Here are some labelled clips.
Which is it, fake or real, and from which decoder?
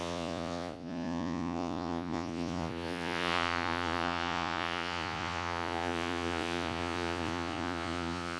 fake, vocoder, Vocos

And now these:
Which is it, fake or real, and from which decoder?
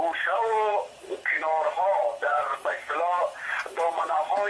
fake, vocoder, Vocos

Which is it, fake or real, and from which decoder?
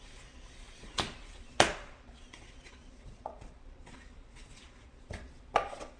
fake, vocoder, Vocos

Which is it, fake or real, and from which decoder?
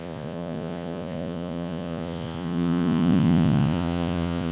fake, vocoder, Vocos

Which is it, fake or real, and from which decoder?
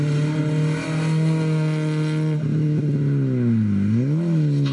real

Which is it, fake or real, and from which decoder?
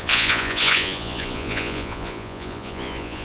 fake, vocoder, Vocos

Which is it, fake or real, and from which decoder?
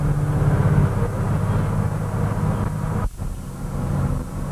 real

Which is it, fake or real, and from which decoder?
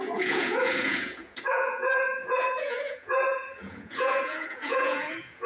fake, vocoder, Vocos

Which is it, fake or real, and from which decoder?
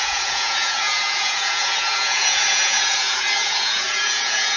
fake, vocoder, Vocos